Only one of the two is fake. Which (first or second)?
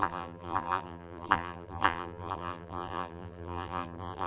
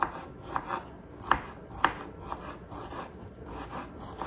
first